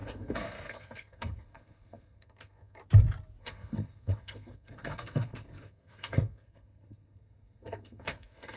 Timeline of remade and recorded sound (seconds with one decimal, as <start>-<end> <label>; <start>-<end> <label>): 0.0-2.8 remade; 2.8-3.4 recorded; 3.4-8.6 remade